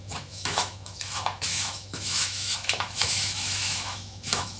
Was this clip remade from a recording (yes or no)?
yes